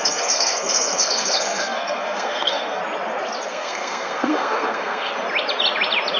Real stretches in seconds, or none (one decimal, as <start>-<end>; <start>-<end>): 2.8-3.5; 5.1-6.2